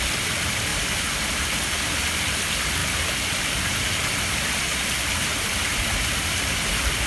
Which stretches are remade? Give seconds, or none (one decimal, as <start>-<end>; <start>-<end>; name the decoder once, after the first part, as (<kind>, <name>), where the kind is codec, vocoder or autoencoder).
2.8-7.1 (vocoder, BigVGAN v2)